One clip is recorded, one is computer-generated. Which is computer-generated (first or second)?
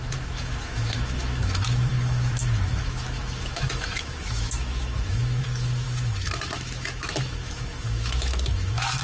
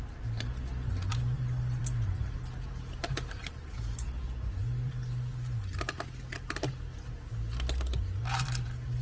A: first